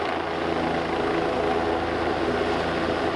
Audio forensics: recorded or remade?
recorded